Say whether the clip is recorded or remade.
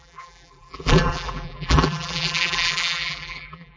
remade